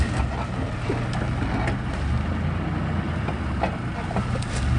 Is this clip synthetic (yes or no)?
no